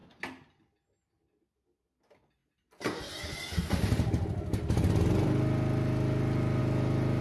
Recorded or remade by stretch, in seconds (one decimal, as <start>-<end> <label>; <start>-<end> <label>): 0.0-7.2 recorded